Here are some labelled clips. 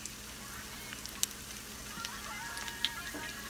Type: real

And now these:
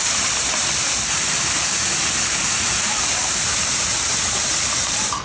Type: fake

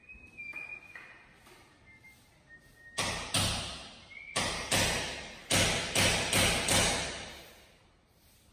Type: real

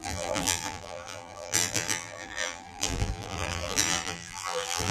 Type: fake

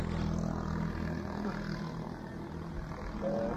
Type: real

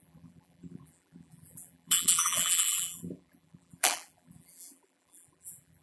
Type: fake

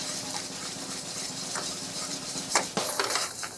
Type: fake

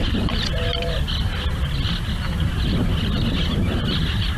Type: real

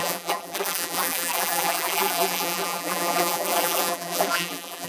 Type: fake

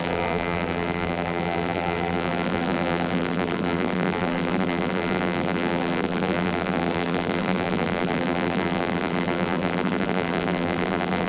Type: fake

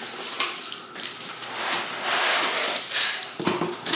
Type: fake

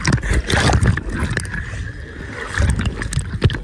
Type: real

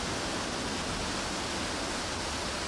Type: real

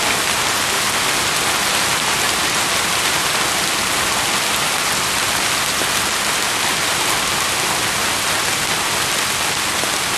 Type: real